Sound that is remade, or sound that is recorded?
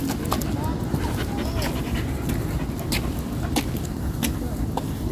recorded